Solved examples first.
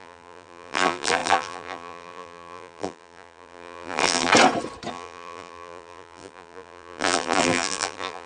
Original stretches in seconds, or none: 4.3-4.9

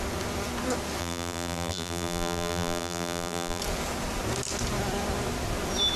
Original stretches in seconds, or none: 0.0-1.0; 3.6-6.0

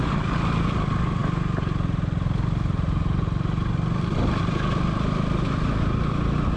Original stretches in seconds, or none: 0.0-6.6

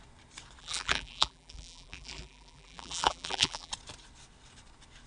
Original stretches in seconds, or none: 0.0-0.6; 3.7-5.1

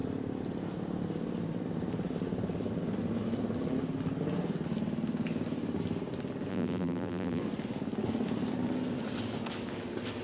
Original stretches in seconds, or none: 0.0-6.5; 7.4-10.2

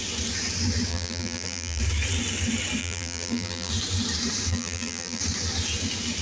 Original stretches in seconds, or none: 0.0-0.9; 1.8-2.8; 3.7-4.5; 5.2-6.2

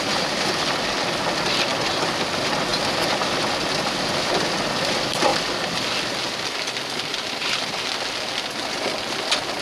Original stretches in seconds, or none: 0.0-9.6